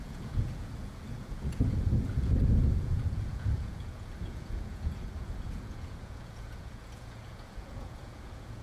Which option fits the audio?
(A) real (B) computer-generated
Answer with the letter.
B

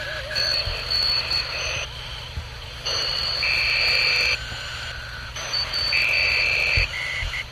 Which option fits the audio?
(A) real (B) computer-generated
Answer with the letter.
B